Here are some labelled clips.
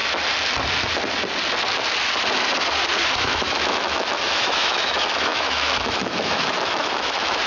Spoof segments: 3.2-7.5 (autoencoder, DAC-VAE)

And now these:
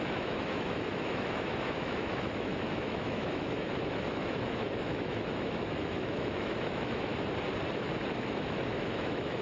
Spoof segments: 0.0-7.1 (autoencoder, DAC-VAE); 8.3-9.4

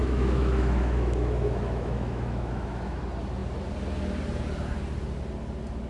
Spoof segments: 0.0-3.0 (autoencoder, DAC-VAE)

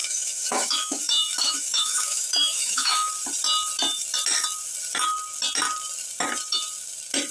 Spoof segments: 0.0-3.1 (autoencoder, DAC-VAE)

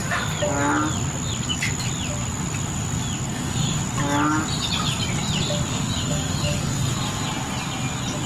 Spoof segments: 3.3-3.8 (autoencoder, DAC-VAE); 5.7-6.7

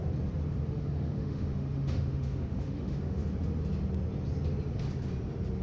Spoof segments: 0.7-3.2 (autoencoder, DAC-VAE)